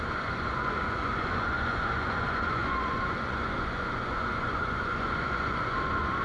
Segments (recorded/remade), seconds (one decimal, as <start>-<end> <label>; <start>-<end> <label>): 0.0-6.2 remade